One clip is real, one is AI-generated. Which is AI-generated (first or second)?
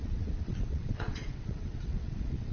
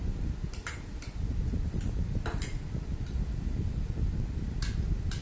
first